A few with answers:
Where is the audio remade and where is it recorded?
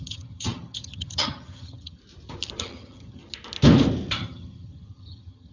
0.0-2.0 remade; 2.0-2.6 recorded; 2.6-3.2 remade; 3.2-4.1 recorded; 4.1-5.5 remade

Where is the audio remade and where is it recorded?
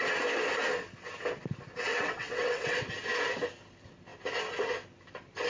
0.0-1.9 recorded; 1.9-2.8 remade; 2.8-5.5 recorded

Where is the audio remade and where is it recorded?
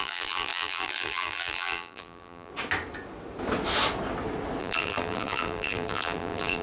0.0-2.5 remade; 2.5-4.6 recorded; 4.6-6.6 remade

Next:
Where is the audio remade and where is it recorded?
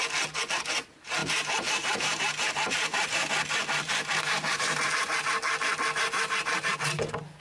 0.0-1.2 recorded; 1.2-4.9 remade; 4.9-7.4 recorded